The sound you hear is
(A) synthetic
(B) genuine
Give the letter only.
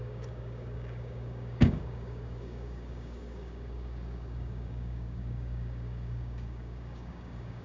A